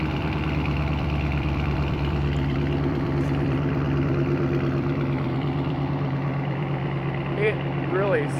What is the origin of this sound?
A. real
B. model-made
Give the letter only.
B